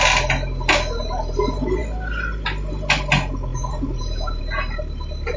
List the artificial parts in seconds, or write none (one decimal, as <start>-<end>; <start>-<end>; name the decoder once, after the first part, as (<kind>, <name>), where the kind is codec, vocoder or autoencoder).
3.5-4.4 (vocoder, BigVGAN v2)